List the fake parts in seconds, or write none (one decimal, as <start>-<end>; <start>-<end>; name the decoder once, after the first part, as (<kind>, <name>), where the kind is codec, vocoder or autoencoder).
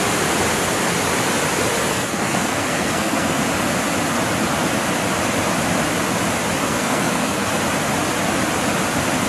1.9-3.4 (codec, SNAC); 6.6-7.5